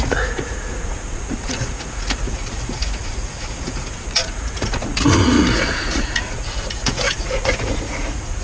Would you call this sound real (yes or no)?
no